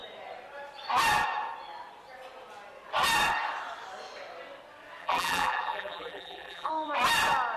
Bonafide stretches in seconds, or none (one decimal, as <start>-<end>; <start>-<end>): 0.0-5.0; 6.7-7.6